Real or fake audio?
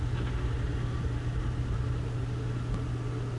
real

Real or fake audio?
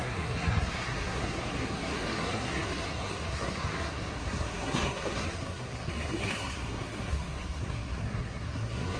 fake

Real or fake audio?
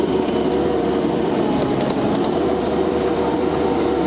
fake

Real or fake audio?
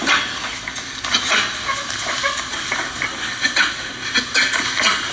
real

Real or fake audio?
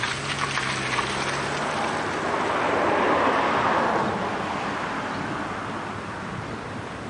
real